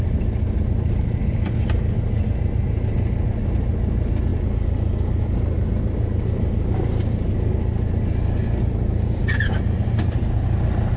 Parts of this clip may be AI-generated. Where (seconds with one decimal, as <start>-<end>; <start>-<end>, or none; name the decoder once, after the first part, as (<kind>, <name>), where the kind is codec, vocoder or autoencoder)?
none